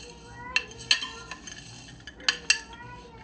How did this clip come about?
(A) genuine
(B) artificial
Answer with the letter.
A